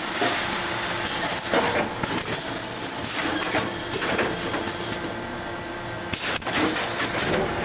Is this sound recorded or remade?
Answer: recorded